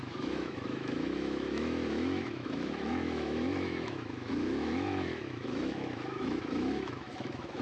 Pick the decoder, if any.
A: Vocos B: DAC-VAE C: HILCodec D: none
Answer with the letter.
B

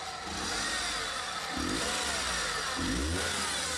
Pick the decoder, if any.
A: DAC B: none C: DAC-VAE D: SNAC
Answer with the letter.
B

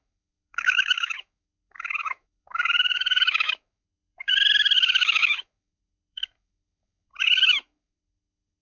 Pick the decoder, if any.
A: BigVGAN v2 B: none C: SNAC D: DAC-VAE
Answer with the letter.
D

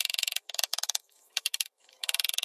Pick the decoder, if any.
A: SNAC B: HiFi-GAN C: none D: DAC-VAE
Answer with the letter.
D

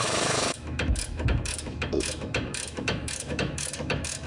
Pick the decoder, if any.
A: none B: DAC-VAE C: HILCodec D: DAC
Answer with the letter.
B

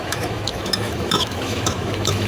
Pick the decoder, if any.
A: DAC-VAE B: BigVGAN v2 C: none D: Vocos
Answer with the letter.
A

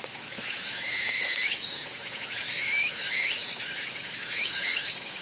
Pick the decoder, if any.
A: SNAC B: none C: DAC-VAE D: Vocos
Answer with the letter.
C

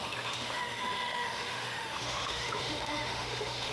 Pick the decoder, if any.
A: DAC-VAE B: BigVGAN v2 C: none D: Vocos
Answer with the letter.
A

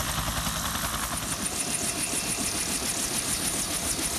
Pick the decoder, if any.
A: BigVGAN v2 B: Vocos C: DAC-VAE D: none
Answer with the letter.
D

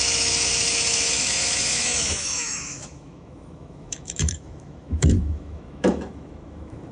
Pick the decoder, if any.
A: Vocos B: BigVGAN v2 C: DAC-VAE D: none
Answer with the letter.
C